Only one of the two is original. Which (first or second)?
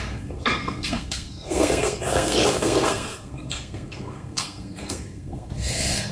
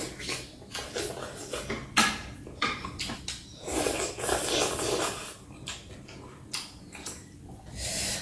second